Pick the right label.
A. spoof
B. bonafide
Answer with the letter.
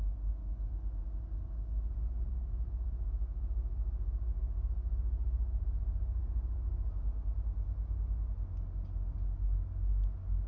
B